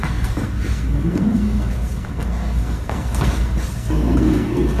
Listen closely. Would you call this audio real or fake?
fake